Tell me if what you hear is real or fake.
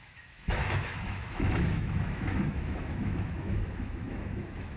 fake